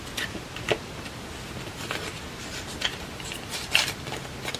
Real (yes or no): yes